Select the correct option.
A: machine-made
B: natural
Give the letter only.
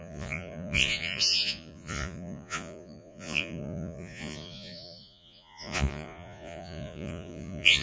A